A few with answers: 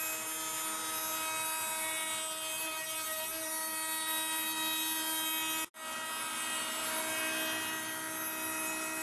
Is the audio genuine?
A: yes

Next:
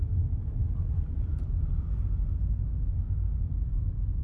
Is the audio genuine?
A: yes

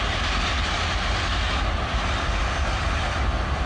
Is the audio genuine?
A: yes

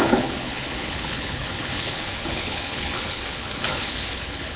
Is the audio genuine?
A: no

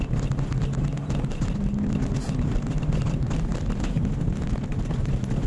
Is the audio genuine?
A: yes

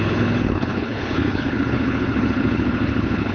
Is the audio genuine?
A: no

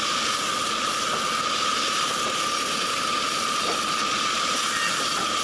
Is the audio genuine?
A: yes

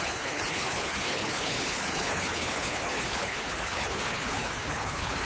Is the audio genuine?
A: no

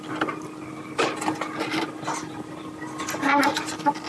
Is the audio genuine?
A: yes